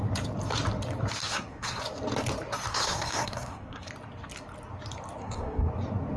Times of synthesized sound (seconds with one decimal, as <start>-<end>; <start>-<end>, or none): 1.2-1.8; 2.7-3.9; 5.2-5.7